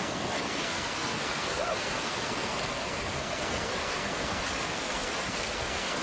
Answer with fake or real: fake